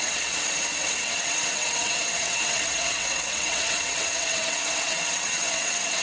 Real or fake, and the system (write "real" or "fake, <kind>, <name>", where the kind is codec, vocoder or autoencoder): fake, vocoder, WaveNeXt